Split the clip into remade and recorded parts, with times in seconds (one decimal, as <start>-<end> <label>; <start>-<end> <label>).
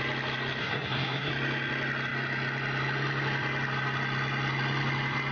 0.0-0.6 recorded; 0.6-1.3 remade; 1.3-5.3 recorded